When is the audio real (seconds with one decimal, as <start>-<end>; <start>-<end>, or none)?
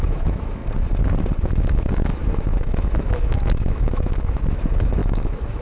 0.6-1.5